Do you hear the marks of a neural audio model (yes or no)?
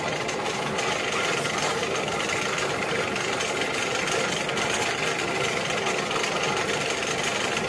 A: no